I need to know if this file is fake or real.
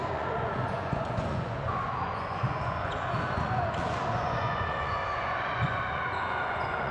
fake